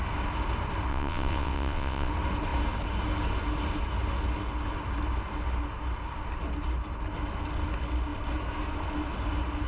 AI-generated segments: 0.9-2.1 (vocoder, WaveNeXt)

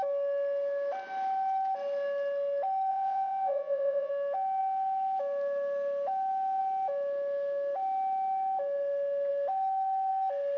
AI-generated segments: 2.9-4.1 (vocoder, WaveNeXt)

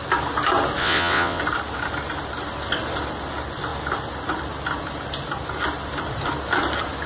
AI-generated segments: 0.8-1.4 (vocoder, WaveNeXt)

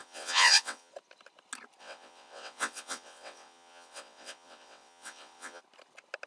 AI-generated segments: 0.0-0.9 (vocoder, WaveNeXt); 1.8-5.6

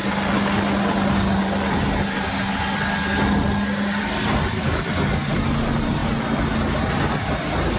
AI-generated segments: none

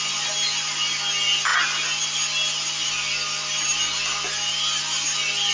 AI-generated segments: none

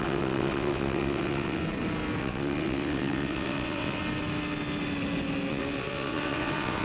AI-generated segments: 0.0-1.6 (vocoder, WaveNeXt); 2.2-4.0; 5.5-6.8